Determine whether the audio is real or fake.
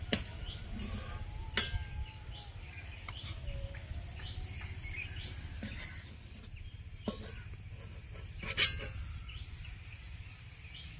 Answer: real